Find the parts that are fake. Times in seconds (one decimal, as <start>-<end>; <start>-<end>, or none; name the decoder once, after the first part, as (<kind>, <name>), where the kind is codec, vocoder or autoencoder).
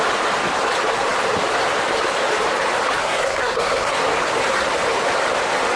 3.0-4.0 (codec, SNAC)